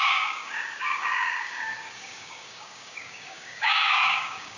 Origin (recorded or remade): remade